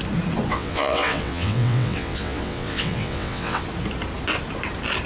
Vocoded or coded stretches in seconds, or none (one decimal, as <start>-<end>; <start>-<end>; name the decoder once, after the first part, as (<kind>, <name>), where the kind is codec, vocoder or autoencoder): 0.5-3.6 (vocoder, WaveNeXt)